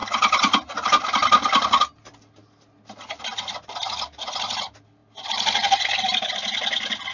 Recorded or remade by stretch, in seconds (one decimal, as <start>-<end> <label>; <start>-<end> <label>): 0.0-7.1 recorded